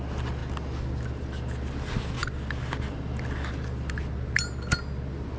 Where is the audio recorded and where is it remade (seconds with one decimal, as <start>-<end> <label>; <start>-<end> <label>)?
0.0-5.4 recorded